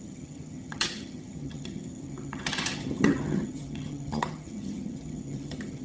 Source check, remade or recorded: remade